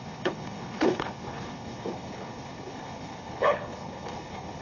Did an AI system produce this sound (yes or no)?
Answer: yes